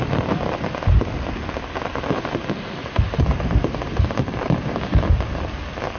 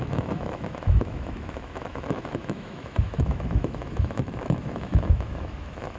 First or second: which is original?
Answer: first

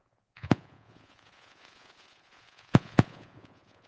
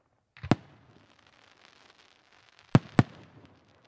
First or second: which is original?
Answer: second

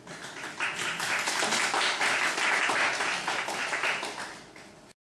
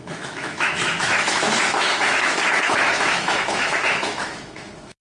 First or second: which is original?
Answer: first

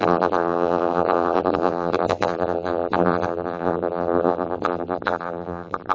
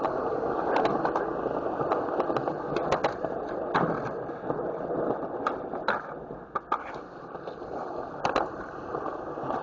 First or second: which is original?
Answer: second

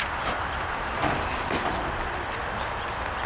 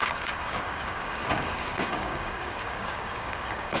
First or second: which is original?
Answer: first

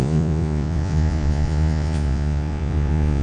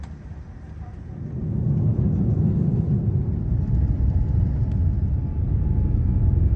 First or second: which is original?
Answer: second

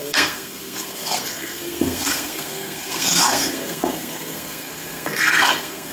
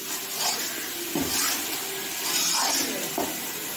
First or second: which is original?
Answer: second